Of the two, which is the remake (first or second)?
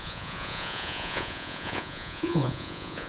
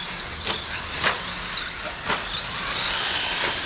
first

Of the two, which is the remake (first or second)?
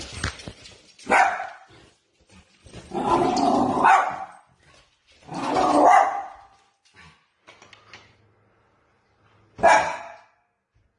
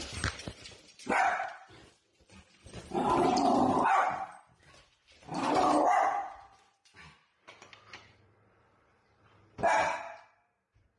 second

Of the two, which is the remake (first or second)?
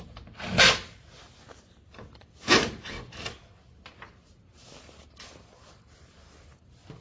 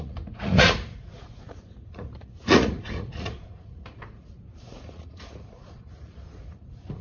second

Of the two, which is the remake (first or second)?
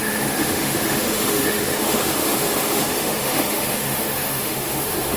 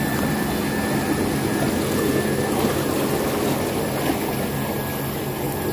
first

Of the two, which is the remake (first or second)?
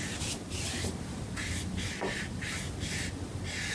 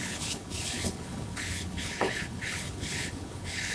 second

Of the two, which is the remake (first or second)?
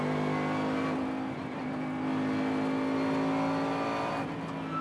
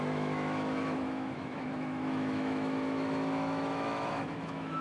second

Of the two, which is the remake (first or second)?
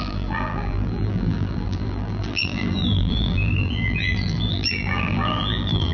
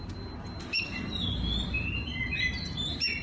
first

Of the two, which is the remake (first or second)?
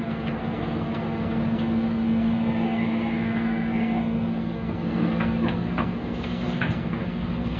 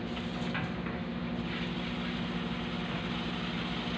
first